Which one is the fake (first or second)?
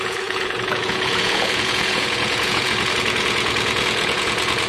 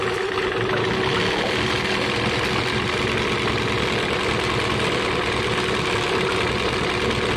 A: first